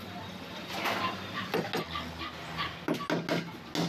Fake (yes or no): no